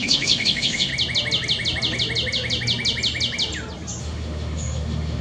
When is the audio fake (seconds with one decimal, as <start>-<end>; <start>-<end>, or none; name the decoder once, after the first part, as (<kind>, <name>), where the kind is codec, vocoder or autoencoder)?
0.0-0.9 (autoencoder, DAC-VAE); 4.0-5.2